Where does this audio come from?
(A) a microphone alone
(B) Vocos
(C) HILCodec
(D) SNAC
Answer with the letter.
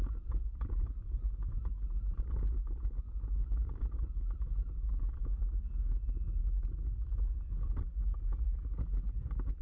A